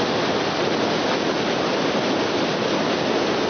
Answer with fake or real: real